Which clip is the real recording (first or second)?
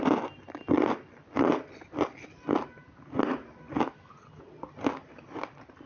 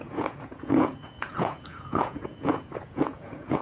first